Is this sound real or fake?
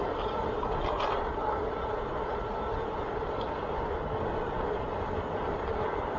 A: real